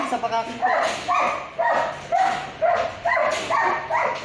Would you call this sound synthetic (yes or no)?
no